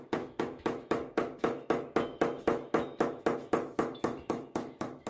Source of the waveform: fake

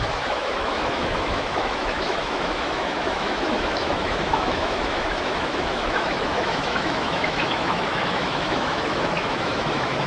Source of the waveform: fake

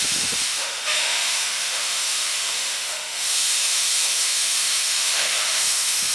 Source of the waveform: fake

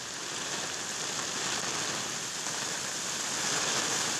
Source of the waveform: real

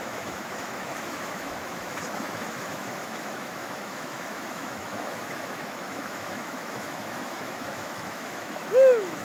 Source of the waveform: fake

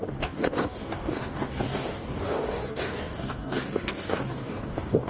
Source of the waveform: fake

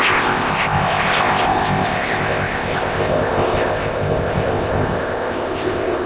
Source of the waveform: fake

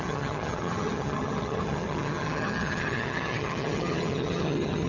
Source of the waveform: fake